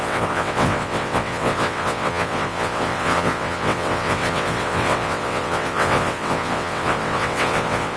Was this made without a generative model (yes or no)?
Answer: no